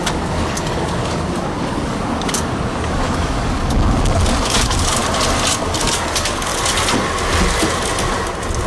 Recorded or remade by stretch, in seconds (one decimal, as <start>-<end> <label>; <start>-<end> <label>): 0.0-5.0 remade; 5.0-5.8 recorded; 5.8-6.5 remade; 6.5-8.7 recorded

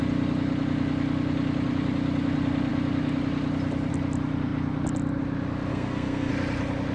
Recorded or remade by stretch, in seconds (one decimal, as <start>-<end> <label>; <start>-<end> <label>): 0.0-5.7 recorded; 5.7-6.3 remade; 6.3-6.9 recorded

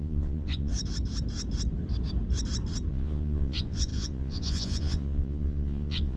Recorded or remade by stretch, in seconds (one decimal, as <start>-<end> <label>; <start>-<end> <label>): 0.0-0.7 remade; 0.7-2.9 recorded; 2.9-6.2 remade

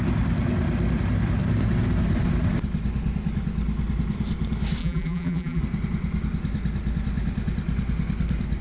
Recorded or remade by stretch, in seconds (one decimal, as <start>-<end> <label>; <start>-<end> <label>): 0.0-4.8 recorded; 4.8-5.6 remade; 5.6-8.6 recorded

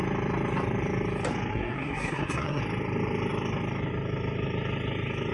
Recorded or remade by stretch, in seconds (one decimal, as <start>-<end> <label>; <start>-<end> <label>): 0.0-1.5 recorded; 1.5-2.6 remade; 2.6-5.3 recorded

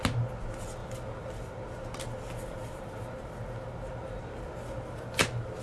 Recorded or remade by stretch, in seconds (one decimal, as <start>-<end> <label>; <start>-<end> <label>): 0.0-5.6 recorded